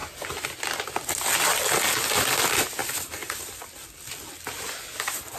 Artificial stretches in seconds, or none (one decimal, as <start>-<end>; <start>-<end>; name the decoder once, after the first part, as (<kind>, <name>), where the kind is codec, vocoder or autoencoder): none